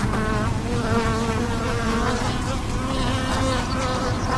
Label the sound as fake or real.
real